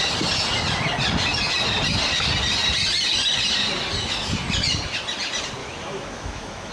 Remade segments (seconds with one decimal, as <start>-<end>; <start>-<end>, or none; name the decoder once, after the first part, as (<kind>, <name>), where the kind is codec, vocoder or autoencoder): 5.6-6.7 (autoencoder, DAC-VAE)

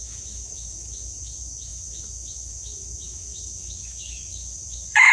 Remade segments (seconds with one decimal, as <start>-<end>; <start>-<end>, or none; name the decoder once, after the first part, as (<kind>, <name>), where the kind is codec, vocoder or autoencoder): 0.0-5.1 (autoencoder, DAC-VAE)

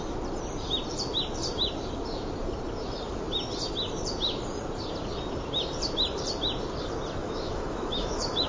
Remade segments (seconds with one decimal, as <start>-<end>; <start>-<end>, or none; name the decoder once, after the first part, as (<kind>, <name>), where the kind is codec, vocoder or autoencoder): 7.2-8.5 (autoencoder, DAC-VAE)

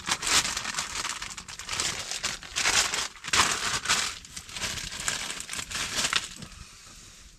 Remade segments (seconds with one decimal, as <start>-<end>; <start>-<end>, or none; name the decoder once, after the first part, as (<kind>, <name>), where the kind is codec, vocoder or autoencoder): none

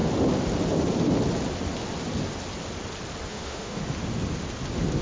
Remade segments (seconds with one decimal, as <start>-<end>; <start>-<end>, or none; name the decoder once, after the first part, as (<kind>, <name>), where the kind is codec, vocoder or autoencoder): 3.3-3.8 (autoencoder, DAC-VAE)

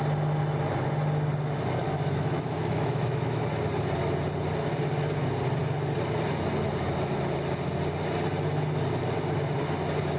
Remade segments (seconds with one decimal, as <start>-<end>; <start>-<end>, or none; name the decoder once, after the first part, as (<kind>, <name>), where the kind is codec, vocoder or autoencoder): 1.8-3.5 (autoencoder, DAC-VAE)

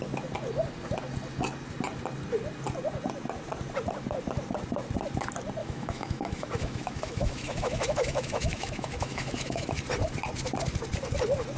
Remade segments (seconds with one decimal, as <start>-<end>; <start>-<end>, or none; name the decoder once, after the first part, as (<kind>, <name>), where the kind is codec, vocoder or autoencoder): 5.6-9.7 (autoencoder, DAC-VAE)